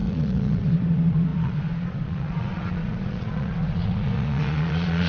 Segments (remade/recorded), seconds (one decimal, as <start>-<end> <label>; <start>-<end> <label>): 0.0-5.1 remade